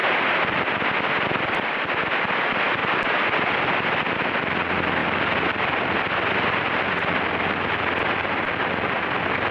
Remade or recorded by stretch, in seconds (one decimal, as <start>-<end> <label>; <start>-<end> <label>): 0.0-1.8 remade; 1.8-5.0 recorded; 5.0-6.3 remade; 6.3-9.5 recorded